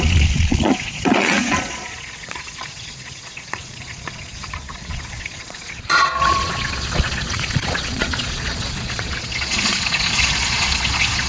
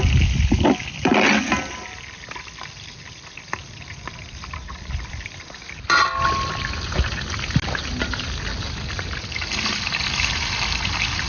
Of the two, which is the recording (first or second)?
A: second